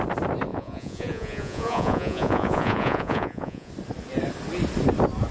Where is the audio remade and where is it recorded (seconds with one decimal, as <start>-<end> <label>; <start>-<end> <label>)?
0.0-0.5 recorded; 0.5-3.7 remade; 3.7-5.3 recorded